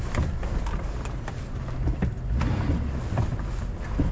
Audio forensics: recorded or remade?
recorded